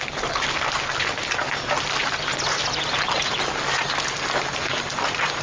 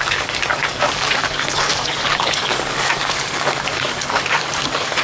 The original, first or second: first